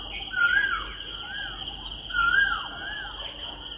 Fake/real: real